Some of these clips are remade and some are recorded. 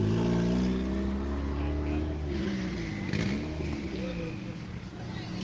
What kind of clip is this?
recorded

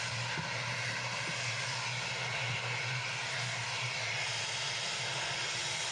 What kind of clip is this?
recorded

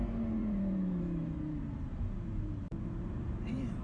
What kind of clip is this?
remade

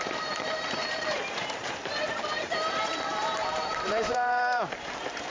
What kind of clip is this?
remade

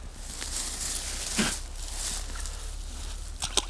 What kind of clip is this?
recorded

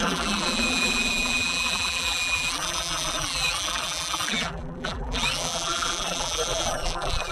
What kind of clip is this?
remade